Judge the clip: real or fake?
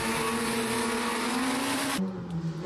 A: real